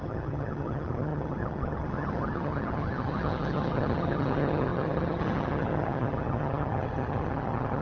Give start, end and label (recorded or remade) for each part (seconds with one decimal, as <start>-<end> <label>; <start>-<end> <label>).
0.0-7.8 remade